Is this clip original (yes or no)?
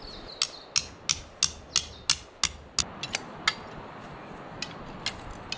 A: yes